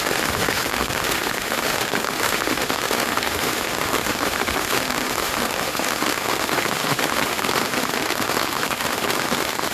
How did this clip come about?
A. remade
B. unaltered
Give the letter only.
A